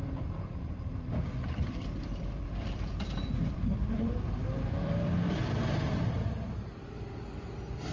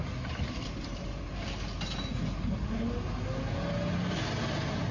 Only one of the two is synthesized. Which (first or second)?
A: first